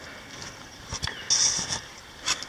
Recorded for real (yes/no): yes